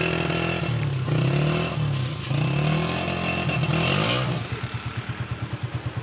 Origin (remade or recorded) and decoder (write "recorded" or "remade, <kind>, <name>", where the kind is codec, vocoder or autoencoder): recorded